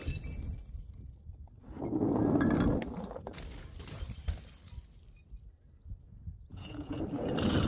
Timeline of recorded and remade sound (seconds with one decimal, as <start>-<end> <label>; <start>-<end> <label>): 0.0-6.5 recorded; 6.5-7.0 remade; 7.0-7.7 recorded